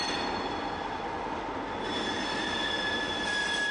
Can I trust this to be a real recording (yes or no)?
yes